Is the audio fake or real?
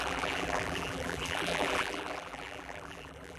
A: fake